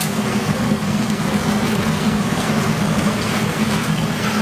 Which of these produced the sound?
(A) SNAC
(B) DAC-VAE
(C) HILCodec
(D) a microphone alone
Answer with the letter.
A